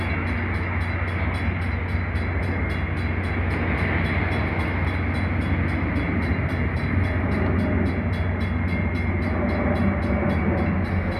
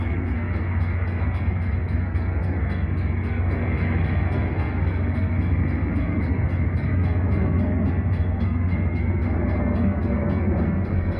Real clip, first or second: first